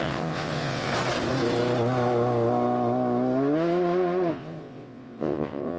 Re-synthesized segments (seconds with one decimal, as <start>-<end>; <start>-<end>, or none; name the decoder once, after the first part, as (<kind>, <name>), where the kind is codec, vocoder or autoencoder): 0.0-0.9 (vocoder, WaveNeXt); 4.3-5.8